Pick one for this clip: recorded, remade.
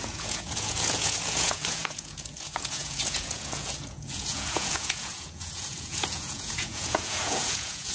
remade